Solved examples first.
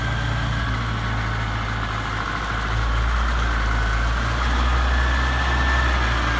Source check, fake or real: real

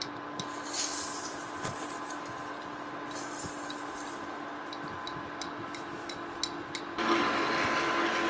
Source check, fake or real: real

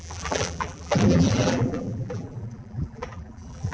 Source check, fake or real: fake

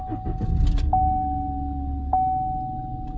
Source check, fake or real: real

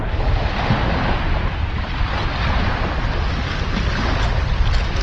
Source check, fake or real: real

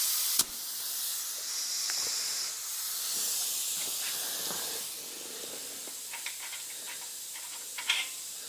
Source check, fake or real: real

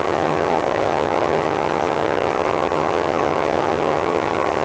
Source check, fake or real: fake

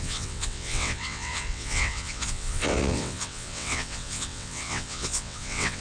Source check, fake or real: fake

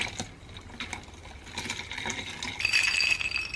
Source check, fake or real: real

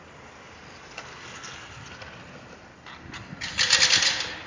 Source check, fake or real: real